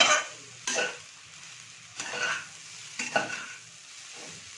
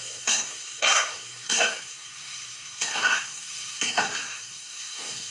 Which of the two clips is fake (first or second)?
second